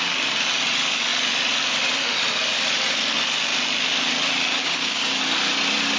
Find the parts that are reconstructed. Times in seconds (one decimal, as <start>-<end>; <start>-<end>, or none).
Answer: 4.6-5.2

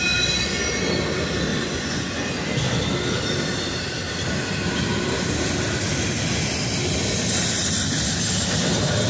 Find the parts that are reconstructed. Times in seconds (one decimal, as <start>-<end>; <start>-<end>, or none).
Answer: 1.5-2.3

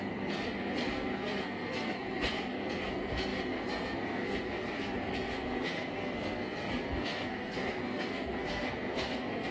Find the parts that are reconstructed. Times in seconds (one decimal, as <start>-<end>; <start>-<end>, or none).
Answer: 0.0-9.5

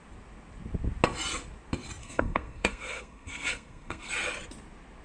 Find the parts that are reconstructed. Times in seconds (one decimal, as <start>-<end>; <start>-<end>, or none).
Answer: 2.0-4.1